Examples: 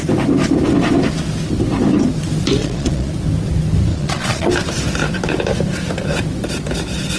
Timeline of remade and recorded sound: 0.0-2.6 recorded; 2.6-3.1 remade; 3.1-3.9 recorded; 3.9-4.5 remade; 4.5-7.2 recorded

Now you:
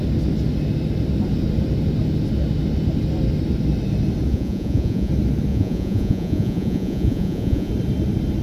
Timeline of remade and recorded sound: 0.0-4.3 recorded; 4.3-5.1 remade; 5.1-5.5 recorded; 5.5-7.7 remade; 7.7-8.4 recorded

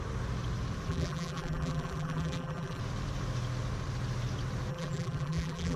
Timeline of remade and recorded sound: 0.0-0.9 recorded; 0.9-2.8 remade; 2.8-4.7 recorded; 4.7-5.8 remade

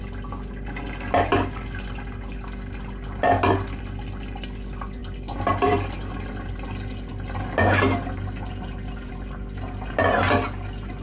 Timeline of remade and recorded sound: 0.0-11.0 recorded

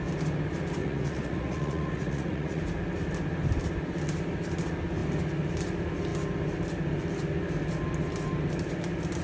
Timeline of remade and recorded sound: 0.0-0.8 recorded; 0.8-2.6 remade; 2.6-9.2 recorded